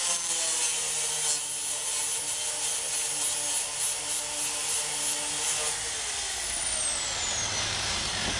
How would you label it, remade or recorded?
recorded